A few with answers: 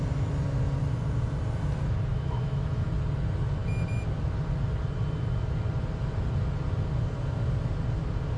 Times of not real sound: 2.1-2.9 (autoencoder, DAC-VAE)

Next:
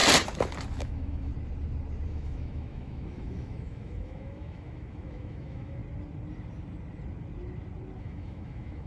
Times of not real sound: 0.7-1.3 (autoencoder, DAC-VAE); 2.1-5.8; 8.0-8.9

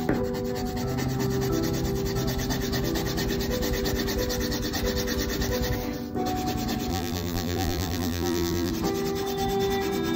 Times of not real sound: 6.9-8.7 (vocoder, BigVGAN v2)

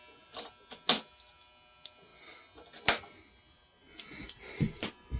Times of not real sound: none